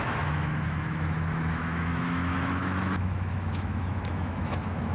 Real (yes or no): no